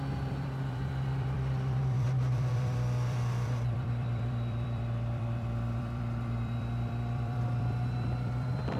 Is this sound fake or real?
fake